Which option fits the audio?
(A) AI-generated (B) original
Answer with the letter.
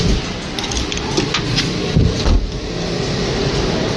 B